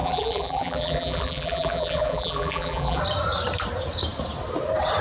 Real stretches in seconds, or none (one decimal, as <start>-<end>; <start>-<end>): 3.0-5.0